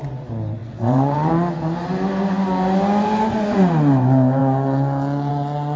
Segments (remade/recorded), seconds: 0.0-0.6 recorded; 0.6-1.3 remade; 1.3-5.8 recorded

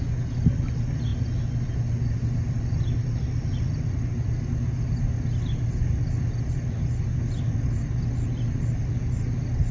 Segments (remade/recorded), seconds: 0.0-9.7 recorded

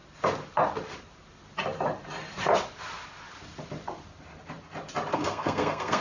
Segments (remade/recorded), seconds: 0.0-5.1 recorded; 5.1-6.0 remade

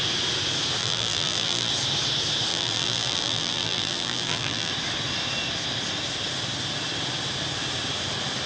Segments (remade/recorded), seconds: 0.0-0.8 recorded; 0.8-1.7 remade; 1.7-2.5 recorded; 2.5-4.7 remade; 4.7-8.5 recorded